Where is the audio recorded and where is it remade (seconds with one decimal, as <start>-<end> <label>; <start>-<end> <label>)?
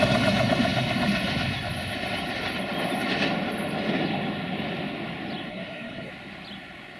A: 0.0-5.5 recorded; 5.5-6.1 remade; 6.1-7.0 recorded